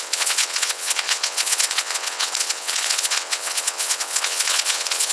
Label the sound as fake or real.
fake